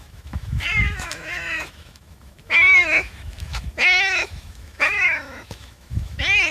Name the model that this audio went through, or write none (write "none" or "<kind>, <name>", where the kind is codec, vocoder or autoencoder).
autoencoder, DAC-VAE